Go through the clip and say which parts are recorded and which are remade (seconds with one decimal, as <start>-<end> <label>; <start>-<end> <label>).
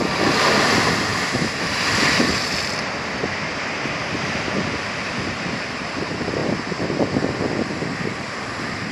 0.0-1.1 recorded; 1.1-2.3 remade; 2.3-8.9 recorded